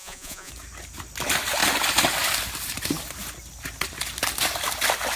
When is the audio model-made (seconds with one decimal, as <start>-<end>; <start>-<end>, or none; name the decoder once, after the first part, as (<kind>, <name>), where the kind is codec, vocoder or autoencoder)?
0.0-0.5 (vocoder, Vocos)